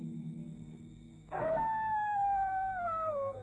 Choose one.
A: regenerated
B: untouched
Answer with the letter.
A